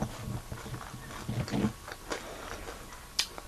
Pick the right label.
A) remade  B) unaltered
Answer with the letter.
B